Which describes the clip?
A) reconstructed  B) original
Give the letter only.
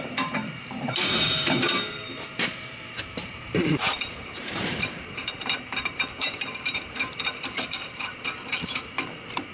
A